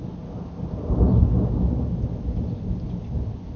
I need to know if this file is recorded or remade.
recorded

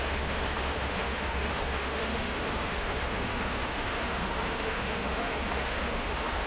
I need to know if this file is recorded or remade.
remade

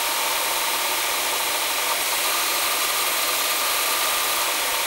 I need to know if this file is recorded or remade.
recorded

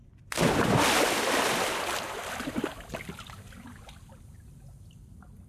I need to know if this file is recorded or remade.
recorded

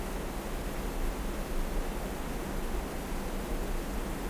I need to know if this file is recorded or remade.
recorded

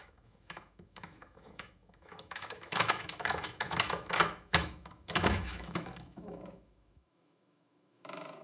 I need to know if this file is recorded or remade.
remade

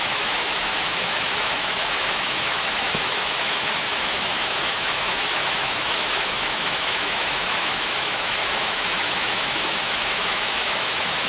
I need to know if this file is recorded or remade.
remade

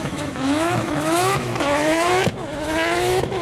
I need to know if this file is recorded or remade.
remade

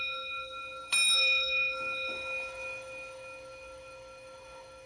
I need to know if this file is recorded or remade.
remade